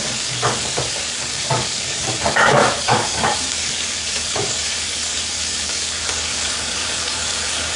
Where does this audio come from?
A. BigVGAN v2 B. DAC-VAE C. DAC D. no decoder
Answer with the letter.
C